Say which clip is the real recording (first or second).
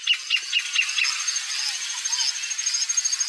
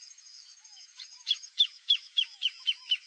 first